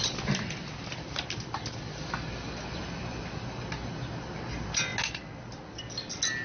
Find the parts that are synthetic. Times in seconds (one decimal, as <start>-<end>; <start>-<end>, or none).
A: none